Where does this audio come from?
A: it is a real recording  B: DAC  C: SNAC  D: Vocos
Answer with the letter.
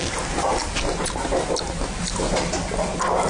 A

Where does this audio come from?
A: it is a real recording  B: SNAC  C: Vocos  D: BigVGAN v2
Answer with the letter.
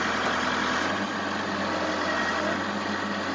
A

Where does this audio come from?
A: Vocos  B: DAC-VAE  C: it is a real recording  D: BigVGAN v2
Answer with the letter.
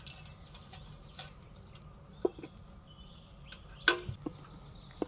C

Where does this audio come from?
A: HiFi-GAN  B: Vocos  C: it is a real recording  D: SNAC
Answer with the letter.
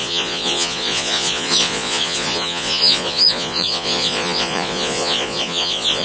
B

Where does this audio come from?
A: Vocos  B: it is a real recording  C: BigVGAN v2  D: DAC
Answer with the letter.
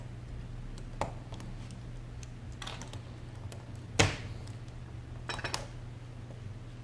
B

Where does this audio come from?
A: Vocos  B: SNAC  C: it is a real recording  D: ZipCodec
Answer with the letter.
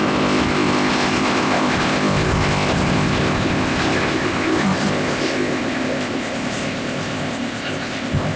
D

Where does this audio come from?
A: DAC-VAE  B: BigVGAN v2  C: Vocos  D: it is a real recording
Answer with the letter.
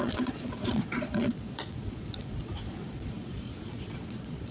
C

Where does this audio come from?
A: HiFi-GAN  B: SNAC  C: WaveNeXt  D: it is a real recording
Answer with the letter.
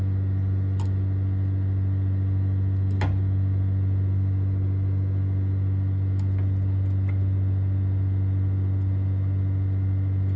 D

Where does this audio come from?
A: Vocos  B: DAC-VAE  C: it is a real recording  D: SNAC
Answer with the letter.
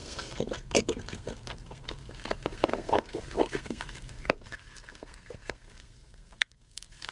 D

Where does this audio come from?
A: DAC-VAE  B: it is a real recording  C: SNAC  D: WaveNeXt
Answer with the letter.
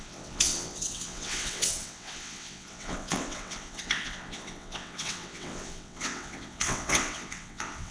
D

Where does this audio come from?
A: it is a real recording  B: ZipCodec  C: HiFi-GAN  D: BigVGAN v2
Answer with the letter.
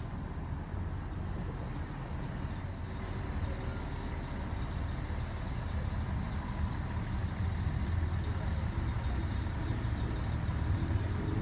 A